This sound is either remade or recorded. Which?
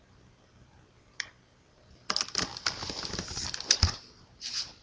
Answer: recorded